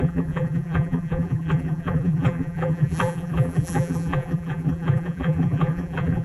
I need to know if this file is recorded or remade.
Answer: remade